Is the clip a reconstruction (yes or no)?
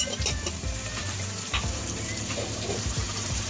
yes